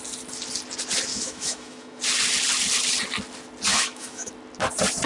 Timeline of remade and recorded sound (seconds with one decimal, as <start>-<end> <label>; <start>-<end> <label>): 0.0-1.1 recorded; 1.1-2.0 remade; 2.0-3.7 recorded; 3.7-4.3 remade; 4.3-5.1 recorded